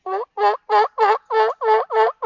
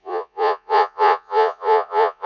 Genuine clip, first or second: first